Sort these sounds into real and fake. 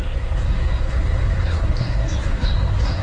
fake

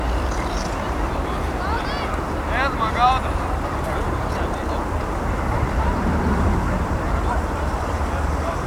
fake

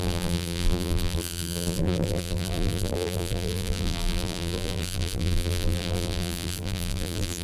fake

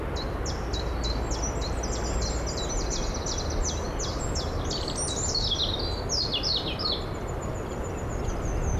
real